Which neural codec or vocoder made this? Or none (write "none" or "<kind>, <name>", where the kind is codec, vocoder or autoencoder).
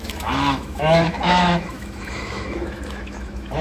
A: autoencoder, DAC-VAE